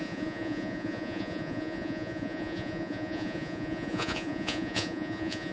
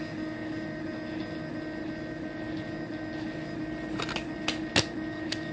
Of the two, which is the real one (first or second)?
second